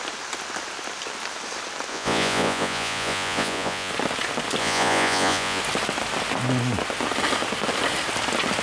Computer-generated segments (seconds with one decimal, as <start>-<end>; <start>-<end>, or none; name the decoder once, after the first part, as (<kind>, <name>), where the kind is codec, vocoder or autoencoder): 1.9-3.9 (vocoder, Vocos); 4.6-5.6